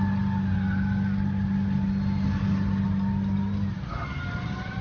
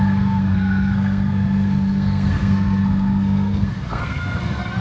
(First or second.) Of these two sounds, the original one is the first